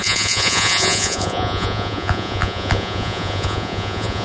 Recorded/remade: remade